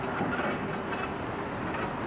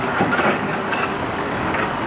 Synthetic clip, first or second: second